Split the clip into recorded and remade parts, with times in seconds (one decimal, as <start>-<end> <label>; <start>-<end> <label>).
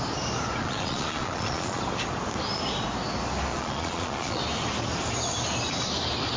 0.0-0.6 recorded; 0.6-1.8 remade; 1.8-3.5 recorded; 3.5-4.4 remade; 4.4-6.4 recorded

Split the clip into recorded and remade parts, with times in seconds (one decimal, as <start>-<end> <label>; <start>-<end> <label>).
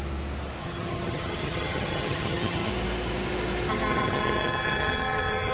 0.0-0.6 recorded; 0.6-2.7 remade; 2.7-3.9 recorded; 3.9-5.5 remade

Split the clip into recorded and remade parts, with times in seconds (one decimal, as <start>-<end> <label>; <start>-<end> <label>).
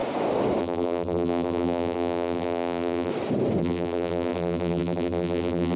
0.0-0.6 recorded; 0.6-3.1 remade; 3.1-3.6 recorded; 3.6-5.8 remade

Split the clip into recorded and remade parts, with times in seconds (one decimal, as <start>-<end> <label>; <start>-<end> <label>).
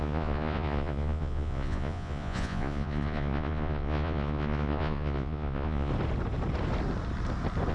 0.0-5.9 remade; 5.9-7.7 recorded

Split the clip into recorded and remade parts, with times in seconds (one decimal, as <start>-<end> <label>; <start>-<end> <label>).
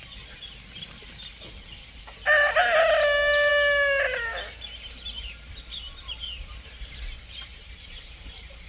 0.0-8.7 recorded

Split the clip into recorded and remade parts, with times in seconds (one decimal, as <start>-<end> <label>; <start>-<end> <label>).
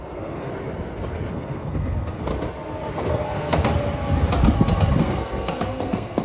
0.0-0.5 remade; 0.5-1.3 recorded; 1.3-2.3 remade; 2.3-3.1 recorded; 3.1-3.7 remade; 3.7-5.0 recorded; 5.0-6.2 remade